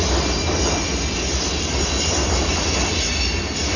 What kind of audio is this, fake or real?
real